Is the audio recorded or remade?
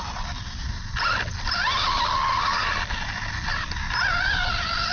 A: recorded